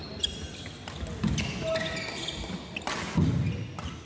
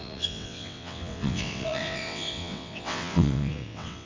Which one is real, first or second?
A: first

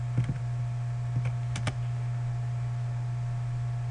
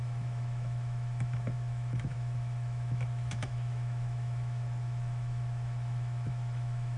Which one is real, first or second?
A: first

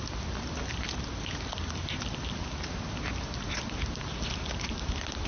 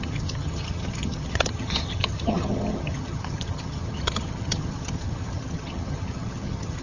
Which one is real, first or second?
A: first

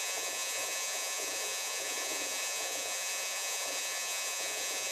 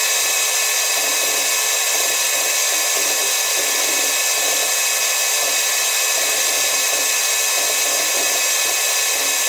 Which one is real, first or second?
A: second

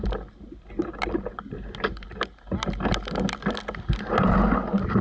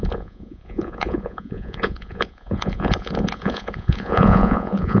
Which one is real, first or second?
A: first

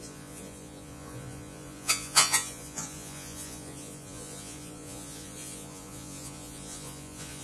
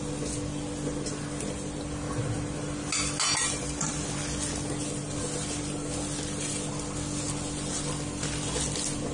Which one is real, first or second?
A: second